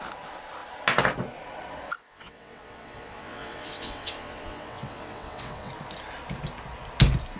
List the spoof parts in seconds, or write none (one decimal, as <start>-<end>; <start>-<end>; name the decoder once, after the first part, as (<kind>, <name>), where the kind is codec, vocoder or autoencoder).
2.0-5.7 (vocoder, WaveNeXt)